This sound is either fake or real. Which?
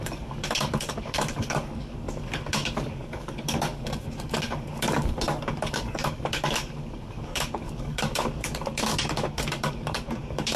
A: fake